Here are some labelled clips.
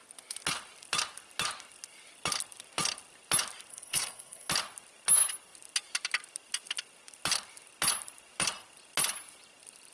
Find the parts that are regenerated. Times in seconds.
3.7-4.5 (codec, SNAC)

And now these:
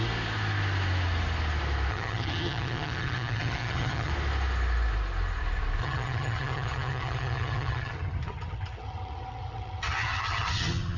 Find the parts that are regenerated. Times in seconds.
1.9-4.1 (vocoder, HiFi-GAN); 5.8-11.0

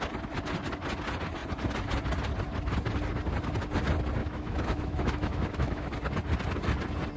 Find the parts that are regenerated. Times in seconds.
4.2-5.9 (autoencoder, DAC-VAE)

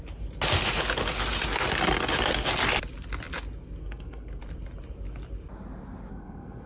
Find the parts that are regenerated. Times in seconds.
3.8-4.4 (codec, SNAC); 6.1-6.7

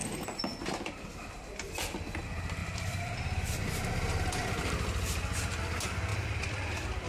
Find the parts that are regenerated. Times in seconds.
2.6-3.7 (vocoder, BigVGAN v2); 6.1-7.1

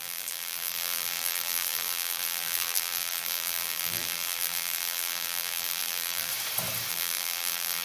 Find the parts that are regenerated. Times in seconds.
0.0-6.3 (vocoder, BigVGAN v2); 6.9-7.8

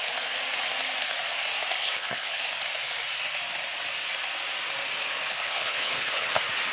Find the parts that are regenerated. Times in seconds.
1.8-2.4 (codec, HILCodec); 5.3-6.3

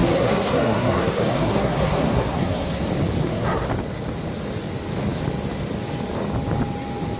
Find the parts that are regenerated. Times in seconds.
0.0-2.8 (codec, SNAC); 3.2-3.7